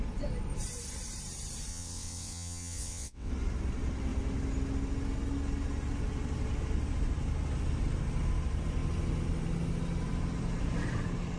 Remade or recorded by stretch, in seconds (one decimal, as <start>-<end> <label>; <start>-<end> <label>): 0.0-1.7 recorded; 1.7-3.3 remade; 3.3-11.4 recorded